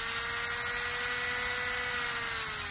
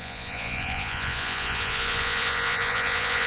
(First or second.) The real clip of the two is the first